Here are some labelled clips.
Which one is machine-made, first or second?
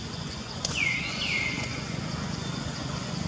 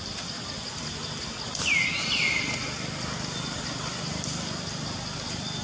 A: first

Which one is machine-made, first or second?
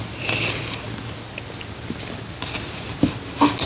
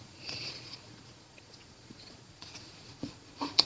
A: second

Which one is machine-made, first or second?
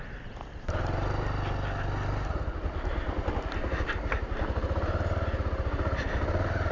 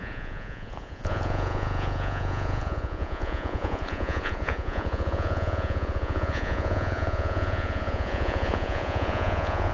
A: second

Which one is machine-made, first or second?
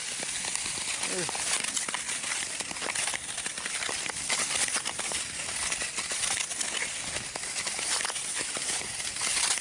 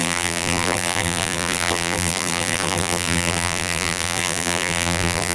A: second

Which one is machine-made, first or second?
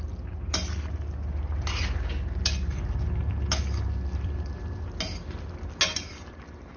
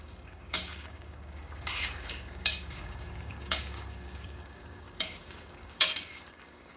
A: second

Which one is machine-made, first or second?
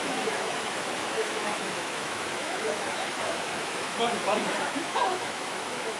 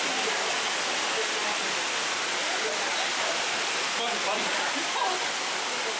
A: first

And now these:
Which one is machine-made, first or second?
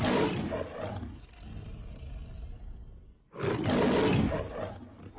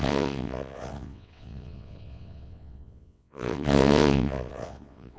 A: second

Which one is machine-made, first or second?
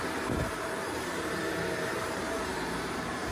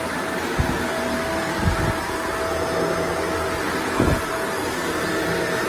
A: first